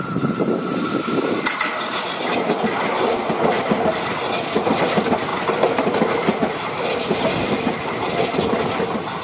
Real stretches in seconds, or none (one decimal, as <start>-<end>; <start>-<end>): 0.0-9.2